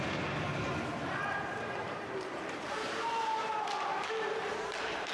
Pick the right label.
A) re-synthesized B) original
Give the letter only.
A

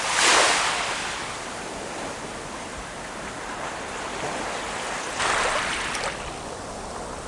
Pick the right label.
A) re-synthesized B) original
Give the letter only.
B